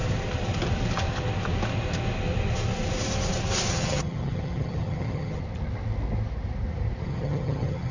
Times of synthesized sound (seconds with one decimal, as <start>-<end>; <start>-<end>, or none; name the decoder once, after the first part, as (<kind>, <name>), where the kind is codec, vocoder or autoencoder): 3.7-5.4 (vocoder, HiFi-GAN); 7.0-7.9

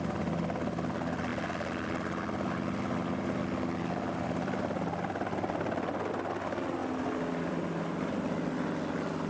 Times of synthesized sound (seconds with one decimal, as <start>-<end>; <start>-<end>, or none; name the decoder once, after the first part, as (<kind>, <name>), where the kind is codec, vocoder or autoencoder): none

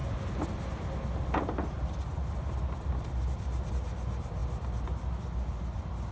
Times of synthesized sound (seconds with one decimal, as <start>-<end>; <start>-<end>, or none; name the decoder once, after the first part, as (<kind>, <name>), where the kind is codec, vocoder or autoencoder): none

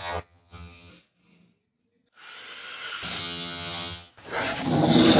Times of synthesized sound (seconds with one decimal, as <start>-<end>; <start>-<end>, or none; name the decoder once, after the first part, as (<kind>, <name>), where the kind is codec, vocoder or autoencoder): 0.0-0.9 (vocoder, HiFi-GAN); 3.2-4.1

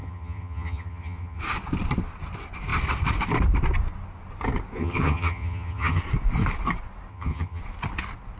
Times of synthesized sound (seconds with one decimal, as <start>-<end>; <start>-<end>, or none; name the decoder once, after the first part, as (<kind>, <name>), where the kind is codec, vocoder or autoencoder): 0.0-1.4 (vocoder, HiFi-GAN); 4.8-6.0; 7.1-7.6

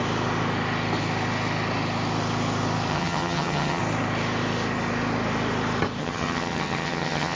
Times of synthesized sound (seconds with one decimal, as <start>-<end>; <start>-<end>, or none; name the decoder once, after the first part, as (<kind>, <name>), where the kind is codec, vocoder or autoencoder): 2.9-3.8 (vocoder, HiFi-GAN); 6.0-7.4